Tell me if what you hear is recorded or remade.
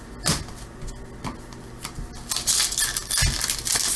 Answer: recorded